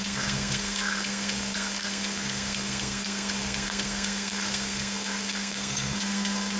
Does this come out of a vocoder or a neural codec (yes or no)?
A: yes